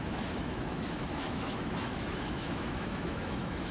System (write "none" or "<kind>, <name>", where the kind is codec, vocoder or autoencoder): autoencoder, DAC-VAE